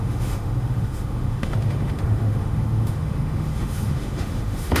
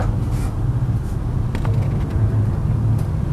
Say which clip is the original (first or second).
second